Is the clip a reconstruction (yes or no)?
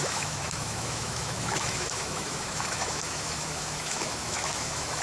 yes